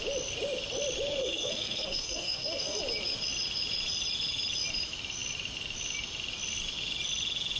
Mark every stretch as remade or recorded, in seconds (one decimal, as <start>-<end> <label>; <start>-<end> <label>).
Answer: 0.0-1.2 recorded; 1.2-2.8 remade; 2.8-7.6 recorded